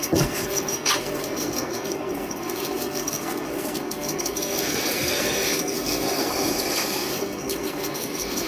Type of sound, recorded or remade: remade